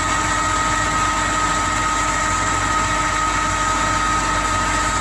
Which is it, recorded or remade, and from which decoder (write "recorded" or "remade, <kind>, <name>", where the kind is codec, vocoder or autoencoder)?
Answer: recorded